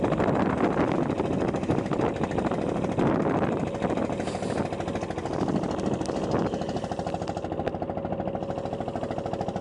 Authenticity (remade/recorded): recorded